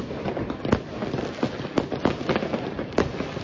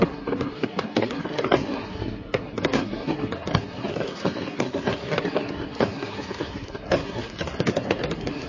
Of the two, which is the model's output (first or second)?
second